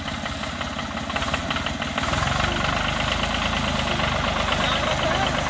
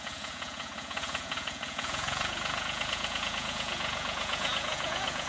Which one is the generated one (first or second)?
second